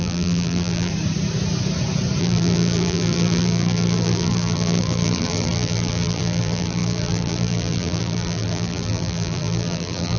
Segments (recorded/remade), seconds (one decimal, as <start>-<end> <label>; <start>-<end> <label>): 0.0-0.9 remade; 0.9-2.2 recorded; 2.2-10.2 remade